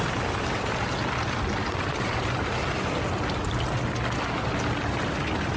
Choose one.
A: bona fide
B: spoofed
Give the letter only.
A